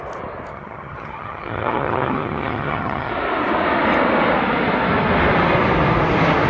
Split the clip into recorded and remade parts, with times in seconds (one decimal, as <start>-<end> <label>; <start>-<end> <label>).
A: 0.0-0.5 recorded; 0.5-3.1 remade; 3.1-6.5 recorded